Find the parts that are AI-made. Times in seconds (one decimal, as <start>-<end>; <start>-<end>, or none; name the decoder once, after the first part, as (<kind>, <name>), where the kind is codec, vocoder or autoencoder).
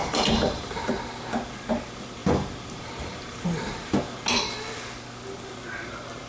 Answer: 0.0-0.9 (vocoder, BigVGAN v2); 2.2-3.9